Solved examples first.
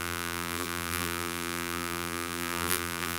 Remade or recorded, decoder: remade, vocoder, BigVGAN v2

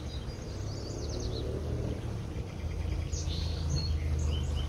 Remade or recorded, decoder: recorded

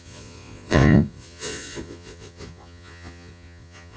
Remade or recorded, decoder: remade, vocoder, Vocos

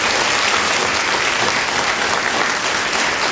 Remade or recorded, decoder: recorded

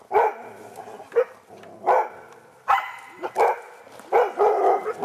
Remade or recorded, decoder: recorded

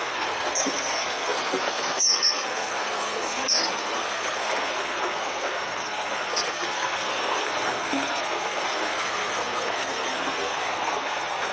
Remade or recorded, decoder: remade, codec, SNAC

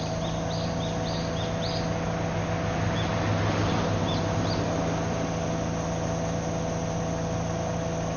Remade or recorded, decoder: recorded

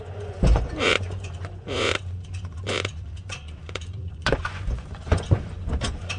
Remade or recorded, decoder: remade, vocoder, Vocos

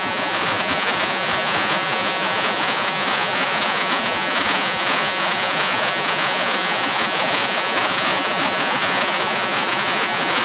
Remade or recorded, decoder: remade, vocoder, Vocos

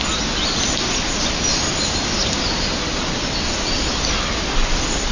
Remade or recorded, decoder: recorded